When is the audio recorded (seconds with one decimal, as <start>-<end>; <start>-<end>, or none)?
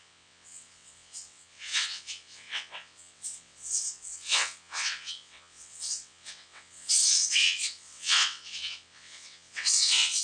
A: none